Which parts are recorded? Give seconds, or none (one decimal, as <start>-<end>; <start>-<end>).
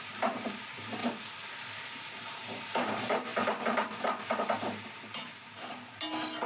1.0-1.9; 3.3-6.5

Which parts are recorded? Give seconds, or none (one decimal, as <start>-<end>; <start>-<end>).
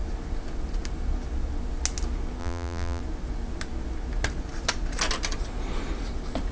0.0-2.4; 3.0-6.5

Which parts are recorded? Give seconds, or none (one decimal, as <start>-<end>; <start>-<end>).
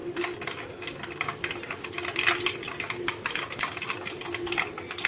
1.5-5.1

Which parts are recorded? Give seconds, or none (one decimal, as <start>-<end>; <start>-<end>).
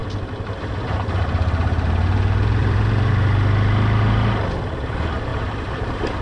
0.0-2.6; 3.1-5.3